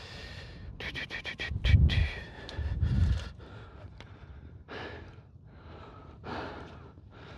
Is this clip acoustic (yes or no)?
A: no